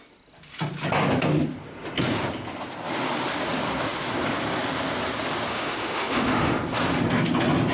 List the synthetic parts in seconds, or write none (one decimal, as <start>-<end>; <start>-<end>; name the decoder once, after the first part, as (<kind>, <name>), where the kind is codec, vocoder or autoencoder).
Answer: 5.5-6.6 (autoencoder, DAC-VAE)